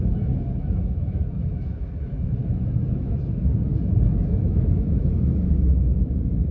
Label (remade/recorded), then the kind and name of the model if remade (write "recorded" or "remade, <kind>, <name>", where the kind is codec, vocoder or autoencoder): remade, autoencoder, DAC-VAE